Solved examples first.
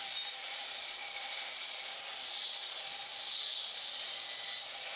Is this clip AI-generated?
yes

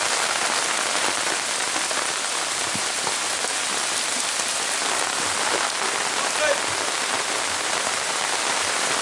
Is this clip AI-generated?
yes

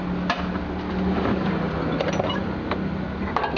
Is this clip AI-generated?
no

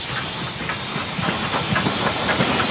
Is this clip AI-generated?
no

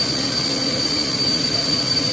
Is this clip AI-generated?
yes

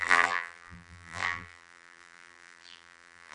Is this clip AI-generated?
yes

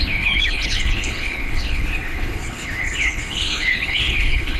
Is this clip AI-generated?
yes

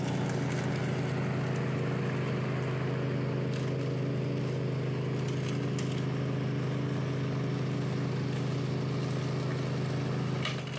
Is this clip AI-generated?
no